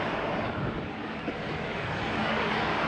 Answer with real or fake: fake